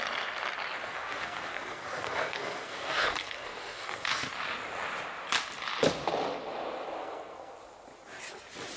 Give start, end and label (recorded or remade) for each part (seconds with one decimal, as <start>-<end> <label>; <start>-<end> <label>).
0.0-0.8 recorded; 0.8-4.3 remade; 4.3-7.0 recorded; 7.0-7.5 remade; 7.5-8.8 recorded